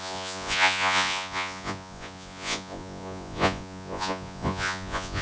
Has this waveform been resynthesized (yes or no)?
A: yes